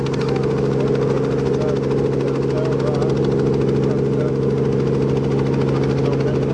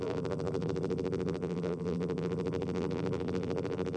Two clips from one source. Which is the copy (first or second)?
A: second